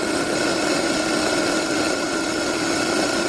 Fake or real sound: real